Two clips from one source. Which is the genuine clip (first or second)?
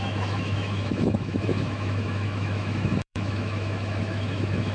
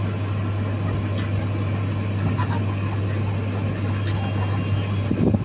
second